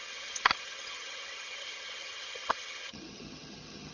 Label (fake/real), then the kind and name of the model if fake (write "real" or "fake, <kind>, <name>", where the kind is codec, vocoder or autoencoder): fake, vocoder, HiFi-GAN